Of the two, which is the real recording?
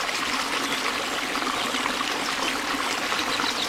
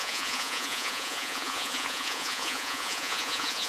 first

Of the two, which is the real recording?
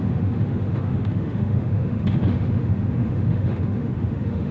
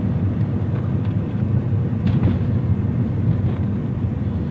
second